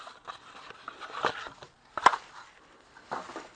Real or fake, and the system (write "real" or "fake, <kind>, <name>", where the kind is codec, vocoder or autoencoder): real